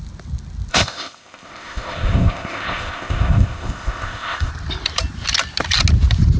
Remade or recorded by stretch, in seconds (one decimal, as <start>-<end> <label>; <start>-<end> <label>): 0.0-0.7 recorded; 0.7-4.5 remade; 4.5-6.4 recorded